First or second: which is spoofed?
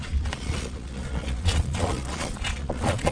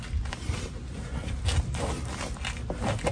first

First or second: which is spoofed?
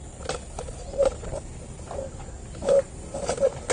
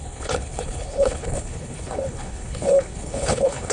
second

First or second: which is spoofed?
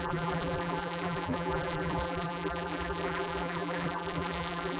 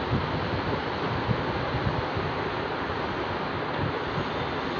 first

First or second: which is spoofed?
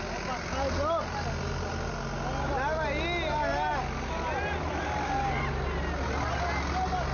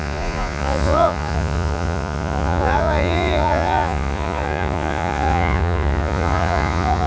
second